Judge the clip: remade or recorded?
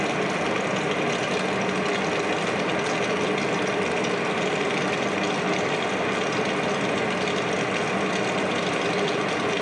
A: recorded